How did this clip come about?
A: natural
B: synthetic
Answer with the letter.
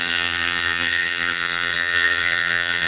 B